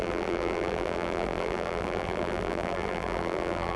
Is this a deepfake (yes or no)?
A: yes